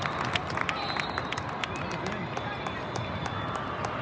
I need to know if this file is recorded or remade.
recorded